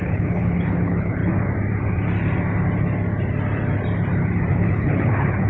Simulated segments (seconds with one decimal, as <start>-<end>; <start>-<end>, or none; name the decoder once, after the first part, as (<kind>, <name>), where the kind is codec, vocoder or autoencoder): 0.0-1.2 (codec, HILCodec); 4.5-5.5